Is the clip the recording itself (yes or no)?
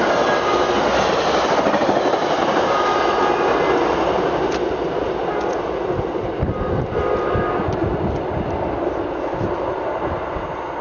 yes